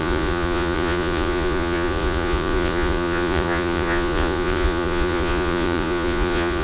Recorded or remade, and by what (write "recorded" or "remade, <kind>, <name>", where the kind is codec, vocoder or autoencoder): remade, vocoder, Vocos